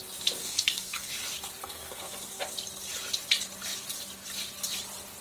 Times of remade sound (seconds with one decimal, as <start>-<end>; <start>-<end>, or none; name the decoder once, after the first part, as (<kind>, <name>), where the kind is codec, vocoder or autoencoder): 0.4-1.1 (codec, SNAC); 1.6-2.4